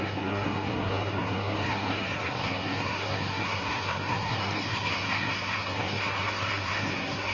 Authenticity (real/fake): fake